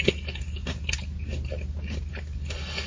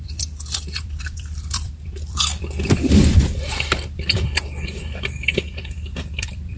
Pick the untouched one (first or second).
first